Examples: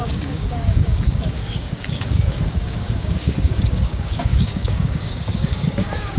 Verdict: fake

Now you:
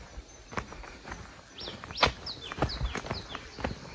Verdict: real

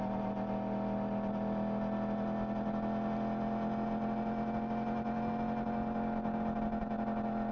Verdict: real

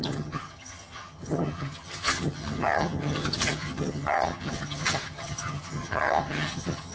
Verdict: fake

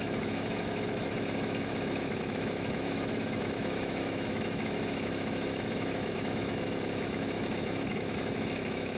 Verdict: fake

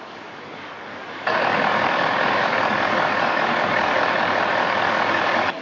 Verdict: fake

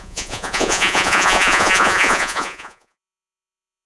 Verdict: fake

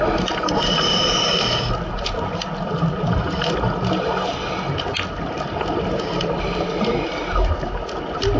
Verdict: real